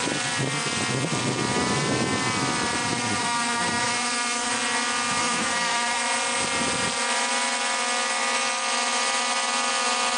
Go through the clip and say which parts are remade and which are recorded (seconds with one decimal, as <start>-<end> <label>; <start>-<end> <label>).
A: 0.0-3.2 recorded; 3.2-4.5 remade; 4.5-5.2 recorded; 5.2-6.0 remade; 6.0-10.2 recorded